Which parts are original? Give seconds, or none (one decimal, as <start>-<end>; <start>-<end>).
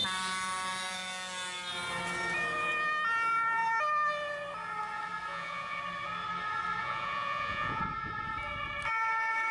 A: 0.0-5.3; 5.8-6.8; 7.8-9.5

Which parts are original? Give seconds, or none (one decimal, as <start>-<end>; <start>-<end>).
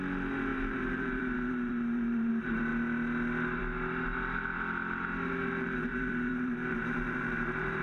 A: 0.0-0.5; 2.3-5.9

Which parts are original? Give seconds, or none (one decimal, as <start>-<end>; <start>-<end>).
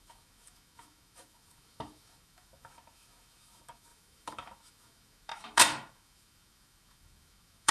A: none